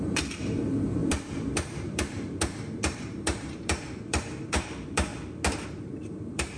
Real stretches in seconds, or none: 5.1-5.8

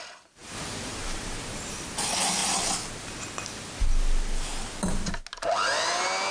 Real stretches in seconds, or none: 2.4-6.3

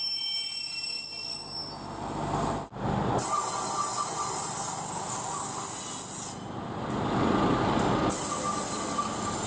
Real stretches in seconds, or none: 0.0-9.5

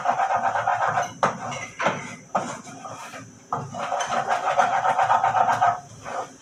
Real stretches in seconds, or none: 0.0-6.4